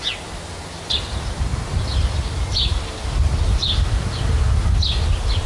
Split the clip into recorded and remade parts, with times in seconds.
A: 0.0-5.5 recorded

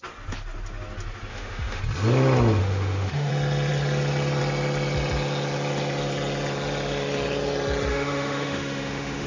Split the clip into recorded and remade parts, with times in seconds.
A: 0.0-1.3 recorded; 1.3-1.8 remade; 1.8-2.6 recorded; 2.6-3.3 remade; 3.3-7.9 recorded; 7.9-9.3 remade

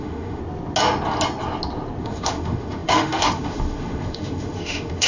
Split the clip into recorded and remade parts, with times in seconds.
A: 0.0-0.4 remade; 0.4-2.0 recorded; 2.0-5.1 remade

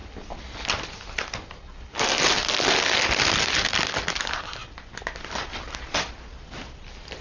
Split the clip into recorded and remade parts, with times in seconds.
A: 0.0-7.2 recorded

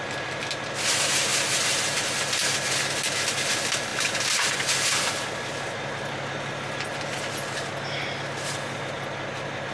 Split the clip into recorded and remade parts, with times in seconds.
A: 0.0-9.7 recorded

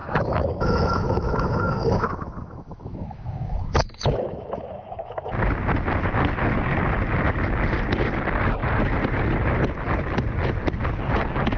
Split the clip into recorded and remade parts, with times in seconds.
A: 0.0-5.3 remade; 5.3-11.6 recorded

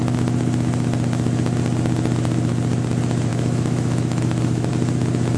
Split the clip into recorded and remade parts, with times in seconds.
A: 0.0-3.3 recorded; 3.3-4.7 remade; 4.7-5.4 recorded

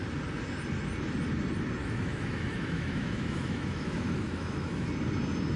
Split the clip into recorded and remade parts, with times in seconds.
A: 0.0-1.8 recorded; 1.8-4.9 remade; 4.9-5.6 recorded